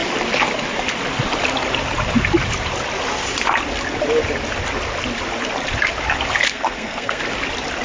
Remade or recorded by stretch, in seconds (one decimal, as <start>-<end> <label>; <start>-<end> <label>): 0.0-6.5 recorded; 6.5-7.2 remade; 7.2-7.8 recorded